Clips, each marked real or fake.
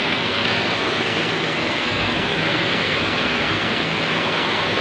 fake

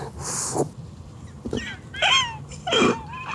real